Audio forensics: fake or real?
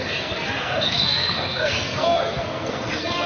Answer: fake